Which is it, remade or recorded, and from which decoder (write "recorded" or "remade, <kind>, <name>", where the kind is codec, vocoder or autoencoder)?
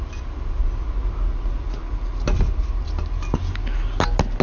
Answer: recorded